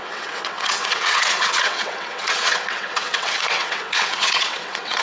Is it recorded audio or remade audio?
remade